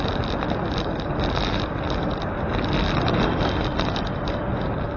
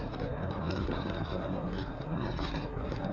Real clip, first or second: first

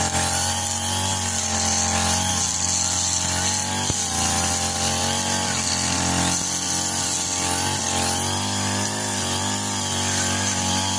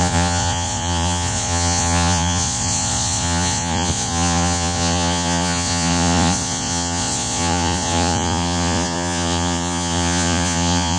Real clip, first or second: first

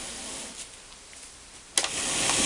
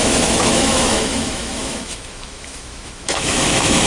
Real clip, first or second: first